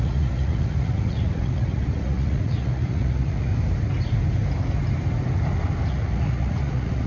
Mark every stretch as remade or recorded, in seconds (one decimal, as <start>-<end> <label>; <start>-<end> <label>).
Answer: 0.0-3.5 remade; 3.5-5.9 recorded; 5.9-7.1 remade